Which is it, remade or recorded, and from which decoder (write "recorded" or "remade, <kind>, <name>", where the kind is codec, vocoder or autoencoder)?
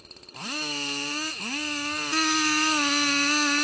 recorded